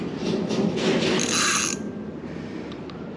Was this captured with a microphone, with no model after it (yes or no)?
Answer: yes